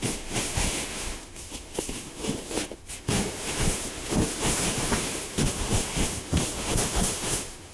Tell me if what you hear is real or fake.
fake